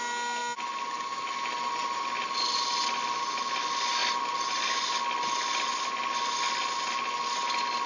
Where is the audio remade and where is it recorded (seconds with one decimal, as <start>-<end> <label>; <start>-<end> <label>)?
0.0-7.9 recorded